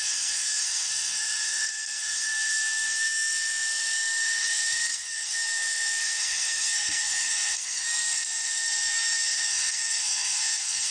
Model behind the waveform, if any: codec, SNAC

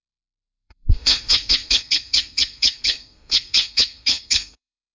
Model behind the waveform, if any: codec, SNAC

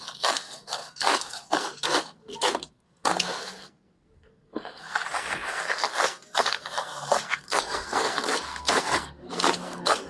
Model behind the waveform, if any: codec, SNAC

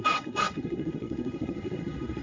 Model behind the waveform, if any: codec, SNAC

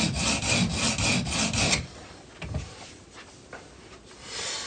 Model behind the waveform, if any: none